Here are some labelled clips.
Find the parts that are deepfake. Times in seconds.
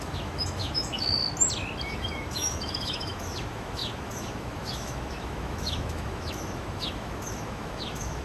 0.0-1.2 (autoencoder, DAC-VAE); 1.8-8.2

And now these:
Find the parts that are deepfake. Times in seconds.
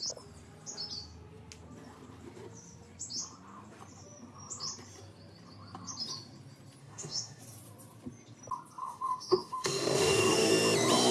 6.8-7.4 (autoencoder, DAC-VAE); 8.8-10.5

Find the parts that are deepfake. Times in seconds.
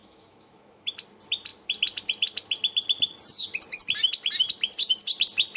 0.0-0.9 (autoencoder, DAC-VAE)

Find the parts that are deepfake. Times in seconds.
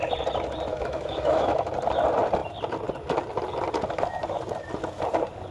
0.7-1.7 (autoencoder, DAC-VAE)